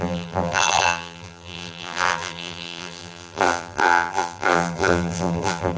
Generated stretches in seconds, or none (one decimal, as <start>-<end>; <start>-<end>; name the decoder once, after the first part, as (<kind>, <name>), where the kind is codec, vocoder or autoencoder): 0.0-5.8 (vocoder, BigVGAN v2)